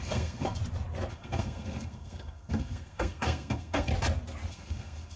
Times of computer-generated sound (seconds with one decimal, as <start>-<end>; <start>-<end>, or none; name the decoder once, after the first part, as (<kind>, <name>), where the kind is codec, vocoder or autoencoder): 0.0-0.6 (codec, SNAC); 1.1-3.9; 4.5-5.2